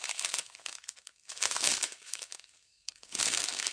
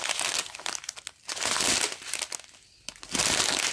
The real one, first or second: second